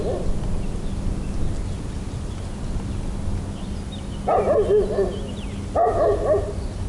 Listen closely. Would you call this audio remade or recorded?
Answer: recorded